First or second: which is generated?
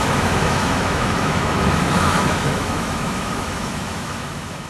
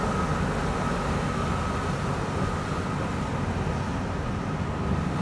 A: first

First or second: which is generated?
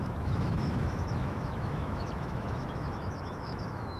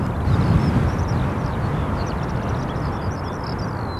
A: first